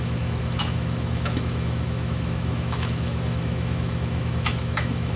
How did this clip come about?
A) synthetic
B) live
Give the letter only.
A